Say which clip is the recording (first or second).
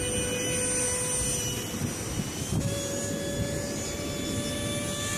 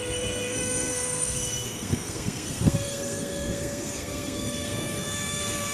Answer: first